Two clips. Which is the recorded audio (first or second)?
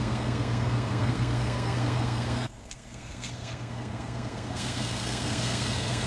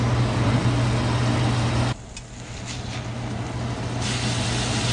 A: second